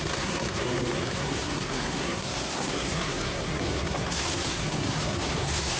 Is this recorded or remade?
remade